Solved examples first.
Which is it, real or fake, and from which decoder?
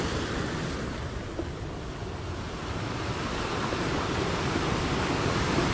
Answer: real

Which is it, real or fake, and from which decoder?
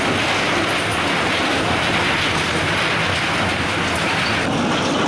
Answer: real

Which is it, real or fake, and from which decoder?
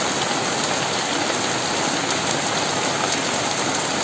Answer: real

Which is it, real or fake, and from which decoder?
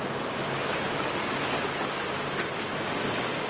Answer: real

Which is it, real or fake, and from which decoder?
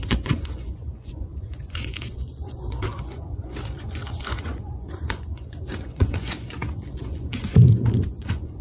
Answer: fake, vocoder, Vocos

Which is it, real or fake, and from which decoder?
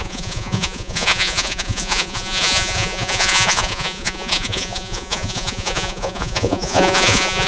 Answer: fake, vocoder, Vocos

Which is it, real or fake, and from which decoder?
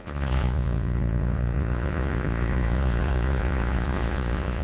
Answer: fake, vocoder, Vocos